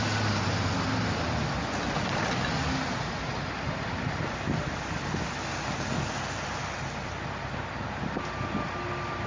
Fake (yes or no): no